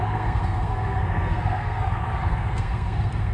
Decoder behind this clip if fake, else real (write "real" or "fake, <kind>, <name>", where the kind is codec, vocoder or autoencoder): fake, codec, SNAC